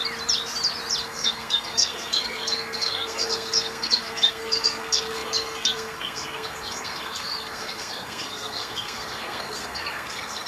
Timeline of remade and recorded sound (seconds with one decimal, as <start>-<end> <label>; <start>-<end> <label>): 0.0-1.0 recorded; 1.0-10.5 remade